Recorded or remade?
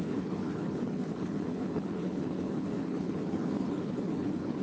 remade